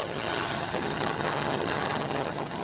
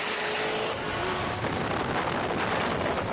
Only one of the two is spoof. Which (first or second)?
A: first